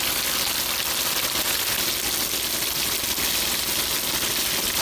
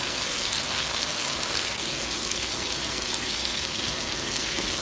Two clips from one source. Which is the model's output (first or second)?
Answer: second